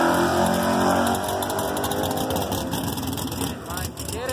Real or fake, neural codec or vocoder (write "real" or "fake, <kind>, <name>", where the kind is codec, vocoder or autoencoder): real